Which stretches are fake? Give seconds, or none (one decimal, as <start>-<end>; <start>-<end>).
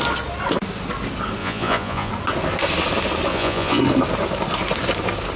1.4-2.1; 3.3-3.8